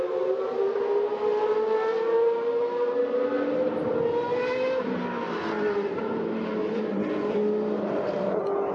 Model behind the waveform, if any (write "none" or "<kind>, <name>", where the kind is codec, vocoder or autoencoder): none